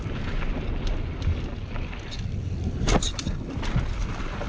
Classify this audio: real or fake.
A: real